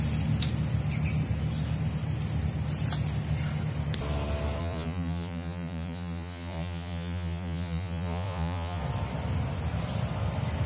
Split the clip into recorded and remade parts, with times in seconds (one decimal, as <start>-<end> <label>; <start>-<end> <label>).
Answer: 0.0-4.6 recorded; 4.6-8.8 remade; 8.8-10.7 recorded